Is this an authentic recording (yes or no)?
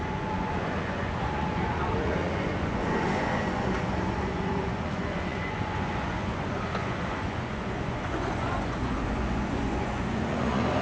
no